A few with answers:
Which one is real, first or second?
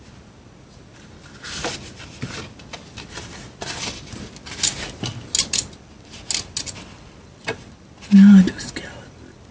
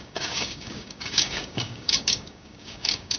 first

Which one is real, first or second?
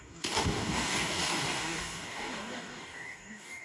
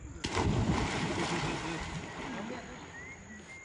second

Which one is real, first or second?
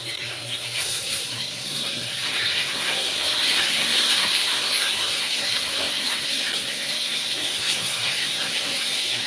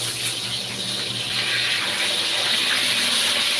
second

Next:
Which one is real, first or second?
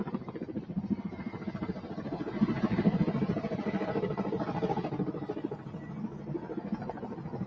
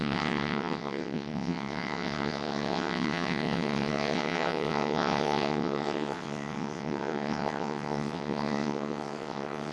first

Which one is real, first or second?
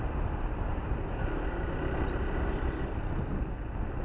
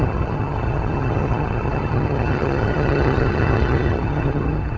first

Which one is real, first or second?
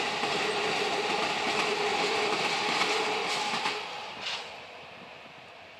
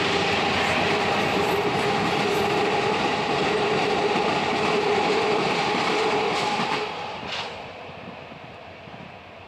first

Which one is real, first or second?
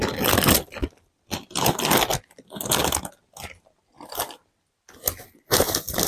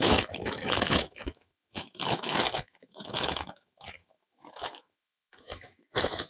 first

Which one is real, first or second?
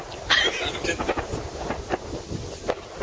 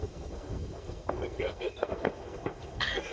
first